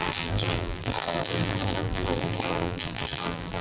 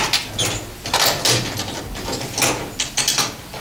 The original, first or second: second